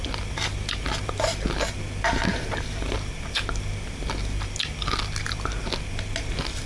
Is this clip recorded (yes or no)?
yes